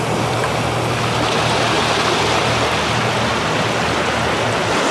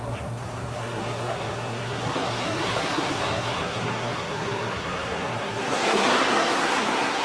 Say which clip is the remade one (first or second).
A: second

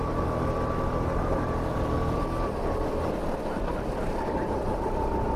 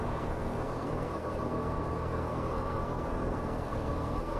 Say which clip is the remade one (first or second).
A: second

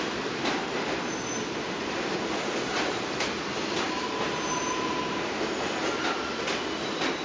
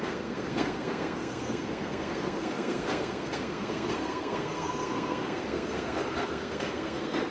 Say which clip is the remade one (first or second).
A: second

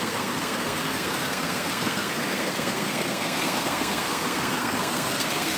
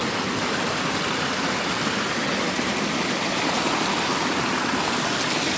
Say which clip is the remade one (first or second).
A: first